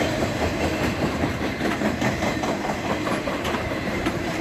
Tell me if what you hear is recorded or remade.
remade